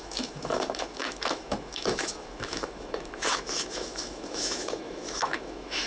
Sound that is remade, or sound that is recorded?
remade